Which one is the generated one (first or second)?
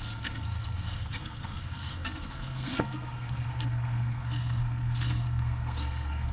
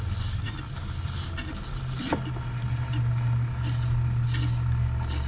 first